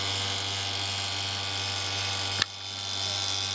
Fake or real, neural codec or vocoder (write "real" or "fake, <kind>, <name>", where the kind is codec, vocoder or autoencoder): real